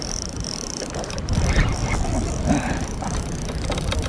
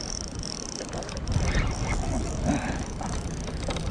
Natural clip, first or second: second